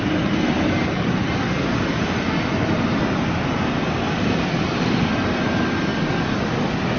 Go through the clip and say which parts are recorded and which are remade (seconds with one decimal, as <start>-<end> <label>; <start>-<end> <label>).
0.0-7.0 recorded